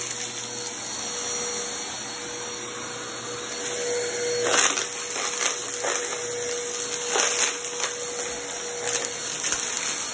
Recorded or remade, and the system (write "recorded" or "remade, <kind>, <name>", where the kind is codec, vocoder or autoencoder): recorded